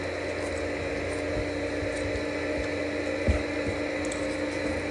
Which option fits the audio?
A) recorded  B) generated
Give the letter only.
A